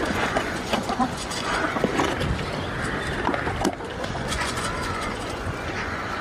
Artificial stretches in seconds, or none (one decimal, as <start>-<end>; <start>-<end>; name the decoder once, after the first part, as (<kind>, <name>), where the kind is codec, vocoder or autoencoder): 0.0-2.1 (vocoder, Vocos); 3.9-6.2